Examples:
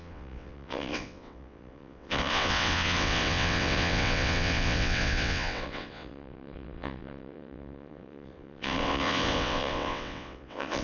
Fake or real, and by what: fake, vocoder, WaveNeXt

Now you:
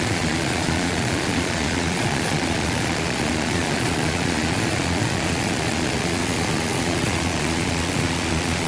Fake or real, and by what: fake, vocoder, Vocos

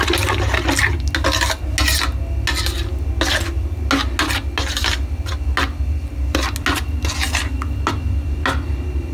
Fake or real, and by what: real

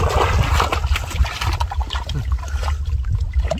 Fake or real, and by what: real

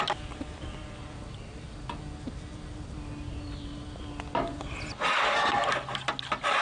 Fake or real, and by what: real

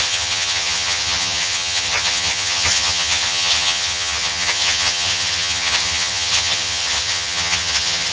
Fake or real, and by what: fake, vocoder, HiFi-GAN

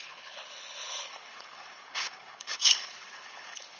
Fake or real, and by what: fake, codec, HILCodec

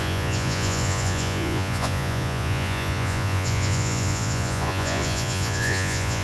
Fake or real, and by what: fake, vocoder, Vocos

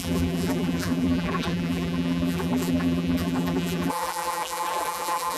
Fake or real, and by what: fake, vocoder, BigVGAN v2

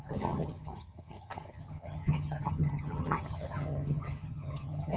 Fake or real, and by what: fake, vocoder, HiFi-GAN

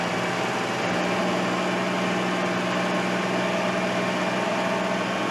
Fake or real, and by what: real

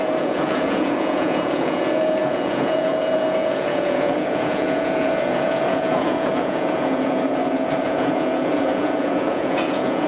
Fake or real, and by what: fake, vocoder, Vocos